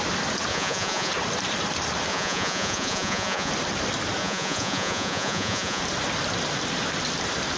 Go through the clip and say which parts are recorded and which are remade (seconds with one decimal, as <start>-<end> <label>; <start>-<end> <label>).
0.0-0.5 recorded; 0.5-1.1 remade; 1.1-2.1 recorded; 2.1-3.5 remade; 3.5-4.2 recorded; 4.2-5.8 remade; 5.8-7.6 recorded